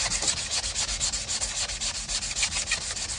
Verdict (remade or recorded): recorded